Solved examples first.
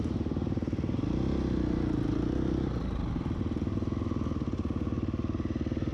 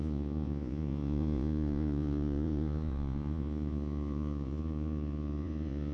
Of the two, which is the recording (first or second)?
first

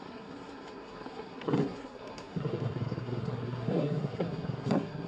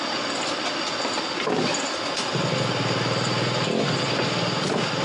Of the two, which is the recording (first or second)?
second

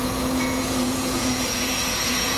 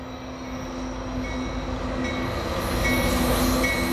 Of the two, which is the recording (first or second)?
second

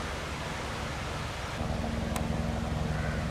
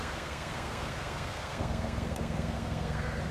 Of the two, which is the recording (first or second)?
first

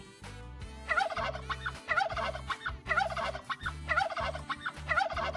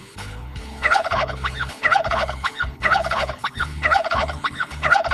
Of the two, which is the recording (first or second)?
first